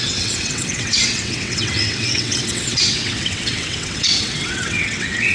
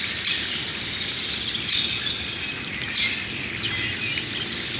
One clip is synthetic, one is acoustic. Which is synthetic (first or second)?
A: first